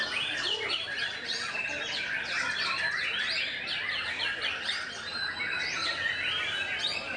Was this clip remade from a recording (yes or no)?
no